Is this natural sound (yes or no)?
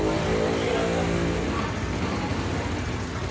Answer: yes